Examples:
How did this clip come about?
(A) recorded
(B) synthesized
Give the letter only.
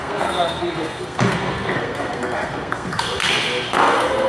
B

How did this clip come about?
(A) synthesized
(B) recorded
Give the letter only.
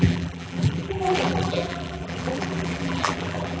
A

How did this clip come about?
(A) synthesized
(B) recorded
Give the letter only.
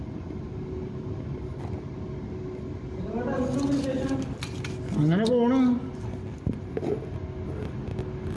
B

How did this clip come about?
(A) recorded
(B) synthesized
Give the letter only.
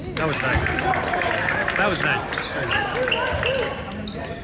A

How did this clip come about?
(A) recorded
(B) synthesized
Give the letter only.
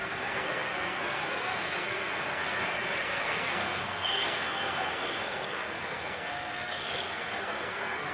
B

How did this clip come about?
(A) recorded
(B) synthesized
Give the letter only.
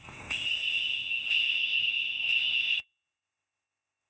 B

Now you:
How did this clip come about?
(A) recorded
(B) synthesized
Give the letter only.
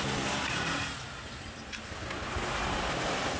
A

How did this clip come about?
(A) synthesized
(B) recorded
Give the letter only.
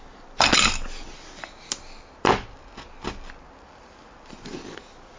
B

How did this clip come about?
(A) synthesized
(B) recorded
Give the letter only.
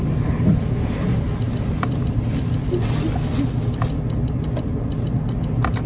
B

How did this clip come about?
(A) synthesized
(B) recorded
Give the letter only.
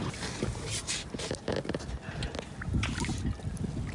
B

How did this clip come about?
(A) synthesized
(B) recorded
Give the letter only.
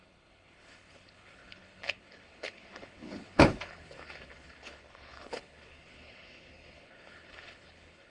A